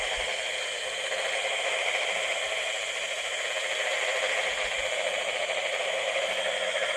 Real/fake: real